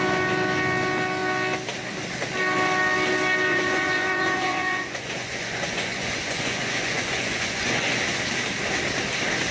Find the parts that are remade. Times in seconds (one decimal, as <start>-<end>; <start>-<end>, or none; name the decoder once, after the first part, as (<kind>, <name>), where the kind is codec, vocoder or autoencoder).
3.5-8.0 (vocoder, Vocos)